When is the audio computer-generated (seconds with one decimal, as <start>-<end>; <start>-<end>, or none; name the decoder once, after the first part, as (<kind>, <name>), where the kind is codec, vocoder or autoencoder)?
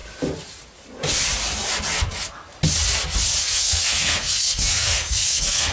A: 3.4-5.7 (codec, SNAC)